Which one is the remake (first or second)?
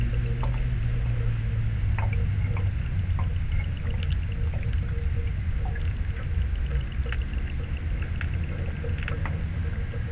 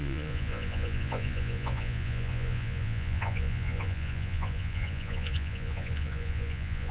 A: second